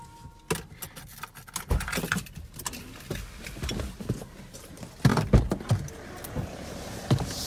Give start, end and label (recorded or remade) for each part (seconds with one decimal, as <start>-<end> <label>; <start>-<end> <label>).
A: 0.0-7.5 recorded